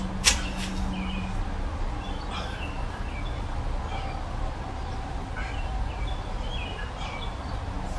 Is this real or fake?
real